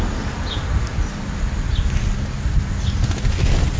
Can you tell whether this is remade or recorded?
recorded